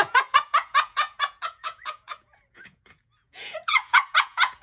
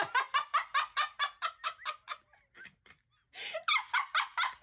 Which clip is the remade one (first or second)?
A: first